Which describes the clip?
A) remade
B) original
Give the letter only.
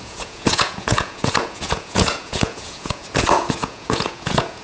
A